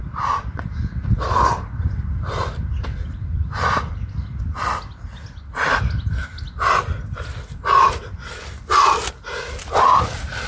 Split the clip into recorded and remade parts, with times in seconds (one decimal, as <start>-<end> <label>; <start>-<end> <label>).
0.0-10.5 recorded

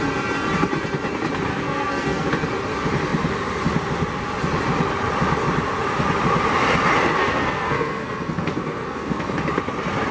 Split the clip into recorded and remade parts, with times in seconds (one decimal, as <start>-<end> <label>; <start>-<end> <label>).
0.0-1.5 recorded; 1.5-2.3 remade; 2.3-7.2 recorded; 7.2-9.3 remade; 9.3-10.1 recorded

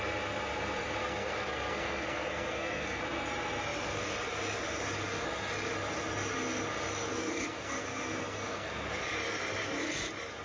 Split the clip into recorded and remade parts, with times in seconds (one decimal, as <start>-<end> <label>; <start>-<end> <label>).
0.0-1.0 recorded; 1.0-3.0 remade; 3.0-7.2 recorded; 7.2-8.9 remade; 8.9-10.4 recorded

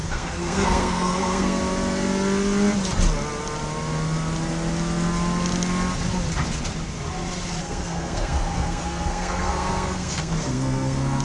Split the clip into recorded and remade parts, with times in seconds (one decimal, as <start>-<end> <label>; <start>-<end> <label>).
0.0-1.6 remade; 1.6-7.6 recorded; 7.6-11.2 remade

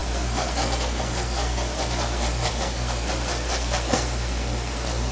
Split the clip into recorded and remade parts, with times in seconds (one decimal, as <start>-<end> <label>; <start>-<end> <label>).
0.0-5.1 remade

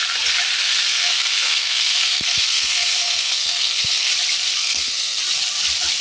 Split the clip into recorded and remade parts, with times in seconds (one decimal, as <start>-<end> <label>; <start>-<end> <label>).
0.0-0.9 recorded; 0.9-4.1 remade; 4.1-4.6 recorded; 4.6-5.2 remade; 5.2-6.0 recorded

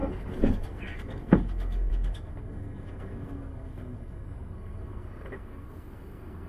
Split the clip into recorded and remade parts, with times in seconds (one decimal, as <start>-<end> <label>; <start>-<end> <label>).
0.0-6.5 remade

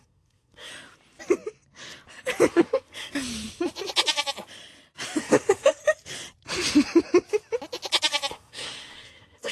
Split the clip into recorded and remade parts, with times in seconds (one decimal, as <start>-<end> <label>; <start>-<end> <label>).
0.0-0.7 remade; 0.7-2.5 recorded; 2.5-3.1 remade; 3.1-5.2 recorded; 5.2-5.8 remade; 5.8-8.3 recorded; 8.3-9.5 remade